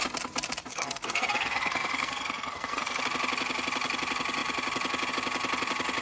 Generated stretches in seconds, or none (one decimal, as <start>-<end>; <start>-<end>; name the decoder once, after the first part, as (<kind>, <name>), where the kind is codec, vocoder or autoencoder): 0.7-3.0 (codec, SNAC)